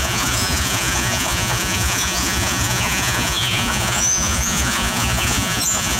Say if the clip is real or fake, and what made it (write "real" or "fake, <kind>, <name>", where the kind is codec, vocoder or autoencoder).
fake, vocoder, Vocos